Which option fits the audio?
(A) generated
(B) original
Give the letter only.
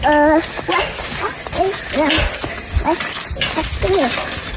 B